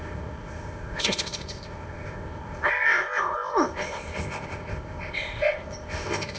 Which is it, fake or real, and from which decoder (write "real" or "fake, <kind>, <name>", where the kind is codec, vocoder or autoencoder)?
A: fake, codec, ZipCodec